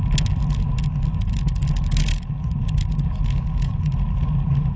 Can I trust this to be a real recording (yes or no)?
yes